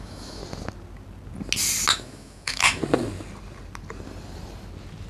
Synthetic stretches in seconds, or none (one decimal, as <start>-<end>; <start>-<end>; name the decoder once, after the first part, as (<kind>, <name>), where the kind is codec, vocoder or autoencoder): 0.0-0.4 (autoencoder, DAC-VAE); 1.9-2.8